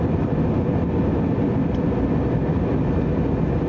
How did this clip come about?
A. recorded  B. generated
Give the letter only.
A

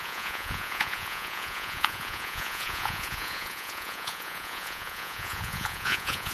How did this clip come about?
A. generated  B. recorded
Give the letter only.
A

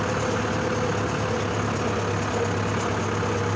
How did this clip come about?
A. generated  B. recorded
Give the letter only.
B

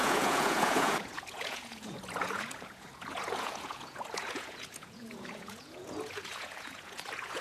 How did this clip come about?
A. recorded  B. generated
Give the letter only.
B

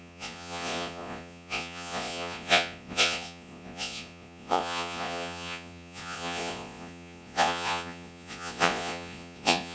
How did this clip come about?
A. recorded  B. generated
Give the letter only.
B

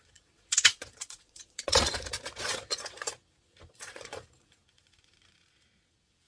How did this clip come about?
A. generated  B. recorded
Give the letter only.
A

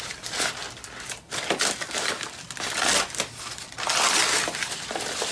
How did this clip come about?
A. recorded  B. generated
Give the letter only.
A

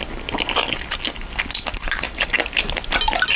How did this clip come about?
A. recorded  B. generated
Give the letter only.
A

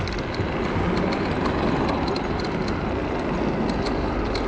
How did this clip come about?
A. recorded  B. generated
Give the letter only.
A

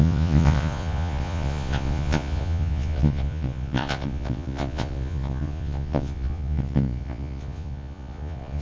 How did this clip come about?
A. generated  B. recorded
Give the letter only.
A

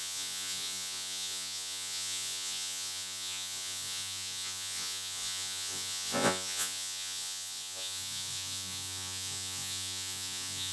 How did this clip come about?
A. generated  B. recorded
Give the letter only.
A